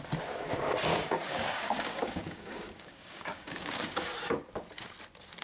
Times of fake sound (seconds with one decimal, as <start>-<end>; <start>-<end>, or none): 0.9-4.1